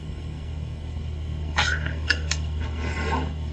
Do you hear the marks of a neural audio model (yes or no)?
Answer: yes